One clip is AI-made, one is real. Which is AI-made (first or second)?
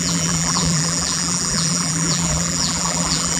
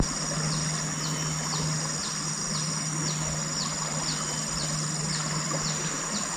first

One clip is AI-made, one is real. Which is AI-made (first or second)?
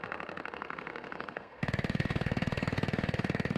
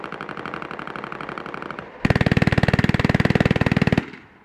first